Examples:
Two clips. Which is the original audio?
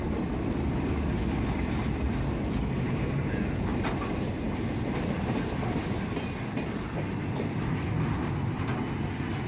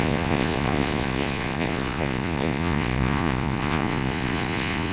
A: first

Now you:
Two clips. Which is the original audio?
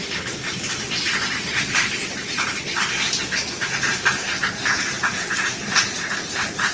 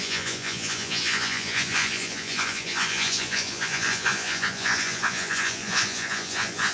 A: first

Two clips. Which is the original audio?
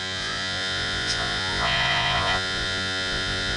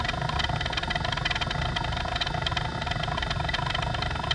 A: second